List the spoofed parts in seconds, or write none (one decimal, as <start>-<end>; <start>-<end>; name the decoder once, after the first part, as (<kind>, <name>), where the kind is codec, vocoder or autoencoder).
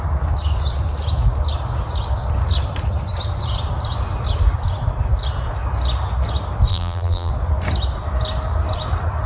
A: 6.7-7.3 (vocoder, BigVGAN v2)